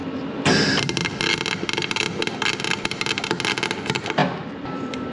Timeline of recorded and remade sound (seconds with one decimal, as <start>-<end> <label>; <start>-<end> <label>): 0.0-5.1 recorded